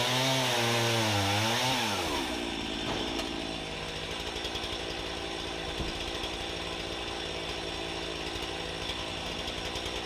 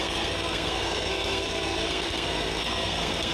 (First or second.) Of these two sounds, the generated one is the second